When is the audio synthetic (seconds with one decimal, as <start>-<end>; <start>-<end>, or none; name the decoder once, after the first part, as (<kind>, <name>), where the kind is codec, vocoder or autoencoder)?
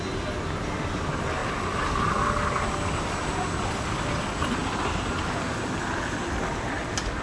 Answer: none